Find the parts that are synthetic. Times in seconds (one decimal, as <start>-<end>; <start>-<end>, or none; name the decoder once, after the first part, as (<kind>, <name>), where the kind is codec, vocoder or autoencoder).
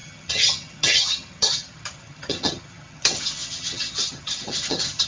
0.0-5.1 (vocoder, HiFi-GAN)